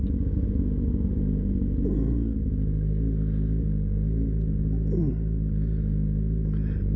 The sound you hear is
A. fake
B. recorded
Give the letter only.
B